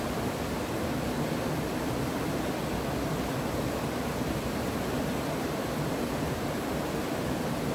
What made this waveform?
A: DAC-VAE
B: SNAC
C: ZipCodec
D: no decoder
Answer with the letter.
D